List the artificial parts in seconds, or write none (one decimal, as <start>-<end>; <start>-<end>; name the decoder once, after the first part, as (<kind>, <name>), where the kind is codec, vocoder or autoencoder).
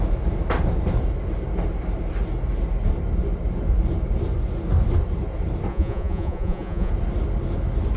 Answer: 5.7-6.9 (vocoder, Vocos)